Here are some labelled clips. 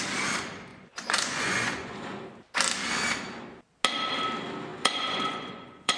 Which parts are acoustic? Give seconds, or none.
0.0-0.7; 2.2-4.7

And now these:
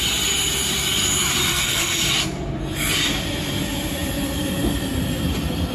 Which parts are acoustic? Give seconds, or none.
0.0-1.5; 2.0-5.7